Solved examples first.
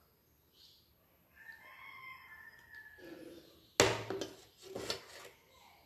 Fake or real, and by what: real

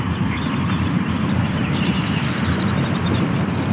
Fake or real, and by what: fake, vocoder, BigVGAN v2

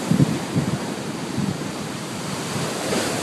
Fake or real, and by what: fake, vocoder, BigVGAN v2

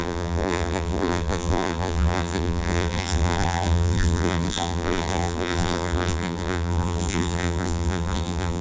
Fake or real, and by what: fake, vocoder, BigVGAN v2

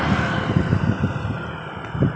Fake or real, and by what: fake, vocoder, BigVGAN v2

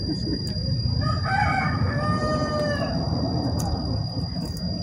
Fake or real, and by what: fake, vocoder, BigVGAN v2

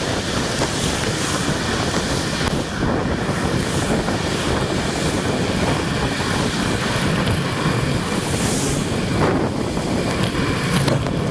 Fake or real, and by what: real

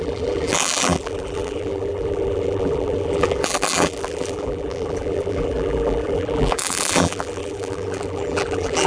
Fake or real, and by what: fake, vocoder, BigVGAN v2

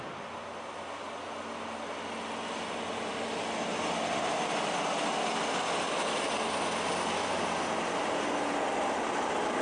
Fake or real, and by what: real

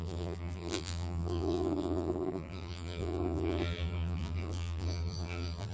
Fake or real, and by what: fake, vocoder, BigVGAN v2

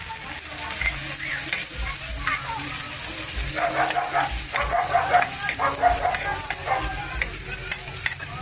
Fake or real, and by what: real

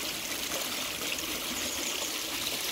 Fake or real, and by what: real